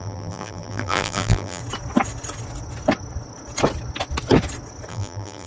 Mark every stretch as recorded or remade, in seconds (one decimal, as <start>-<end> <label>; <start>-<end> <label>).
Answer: 0.0-1.6 remade; 1.6-4.9 recorded; 4.9-5.5 remade

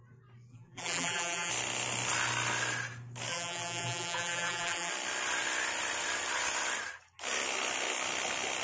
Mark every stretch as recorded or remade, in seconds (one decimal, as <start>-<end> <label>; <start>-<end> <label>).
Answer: 0.0-0.5 recorded; 0.5-1.5 remade; 1.5-3.3 recorded; 3.3-4.9 remade; 4.9-8.6 recorded

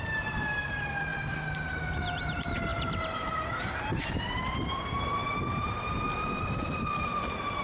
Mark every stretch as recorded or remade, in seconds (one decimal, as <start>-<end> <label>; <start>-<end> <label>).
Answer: 0.0-7.6 remade

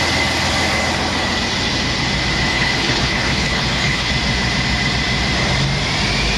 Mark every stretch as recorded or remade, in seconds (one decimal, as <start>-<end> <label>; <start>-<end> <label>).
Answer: 0.0-2.5 recorded; 2.5-4.1 remade; 4.1-6.4 recorded

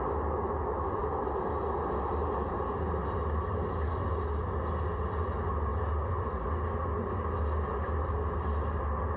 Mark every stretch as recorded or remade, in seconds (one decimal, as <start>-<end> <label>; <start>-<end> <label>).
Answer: 0.0-9.2 recorded

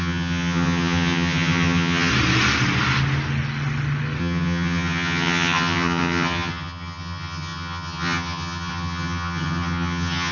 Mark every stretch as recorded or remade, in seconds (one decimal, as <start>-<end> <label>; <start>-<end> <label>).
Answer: 0.0-2.1 remade; 2.1-4.2 recorded; 4.2-10.3 remade